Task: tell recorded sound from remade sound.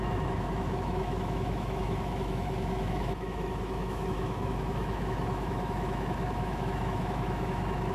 remade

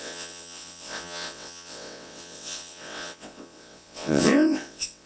remade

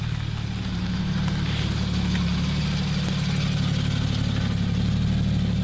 recorded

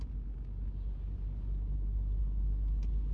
recorded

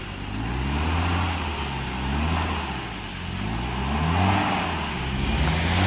recorded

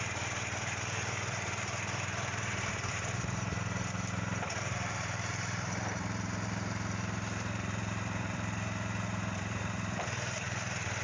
remade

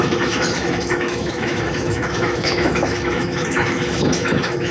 remade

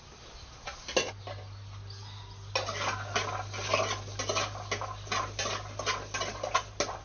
recorded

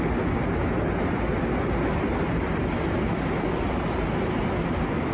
recorded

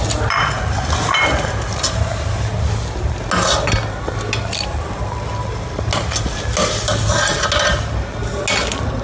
recorded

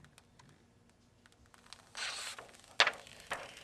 recorded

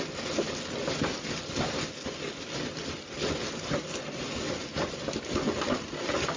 recorded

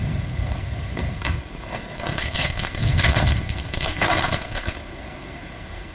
remade